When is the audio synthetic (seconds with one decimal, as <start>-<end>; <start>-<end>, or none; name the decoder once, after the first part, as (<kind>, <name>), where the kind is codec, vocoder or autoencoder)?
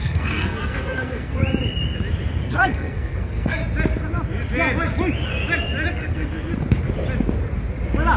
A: 0.0-1.4 (codec, SNAC); 2.4-3.6; 5.9-6.5